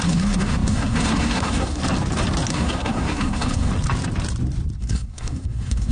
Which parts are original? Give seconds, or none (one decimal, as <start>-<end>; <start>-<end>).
1.8-2.5; 3.7-4.8